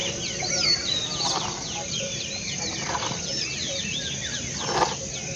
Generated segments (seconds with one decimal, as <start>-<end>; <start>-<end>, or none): 0.0-3.2